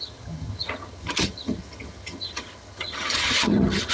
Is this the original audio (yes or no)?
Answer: no